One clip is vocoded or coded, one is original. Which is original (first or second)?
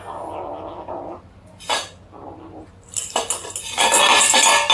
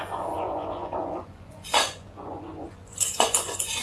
first